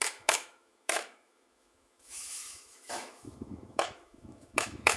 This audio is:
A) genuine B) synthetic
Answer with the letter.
B